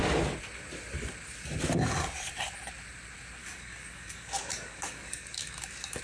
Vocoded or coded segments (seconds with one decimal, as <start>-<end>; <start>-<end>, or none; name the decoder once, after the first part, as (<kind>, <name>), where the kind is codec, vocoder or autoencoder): 3.4-6.0 (codec, DAC)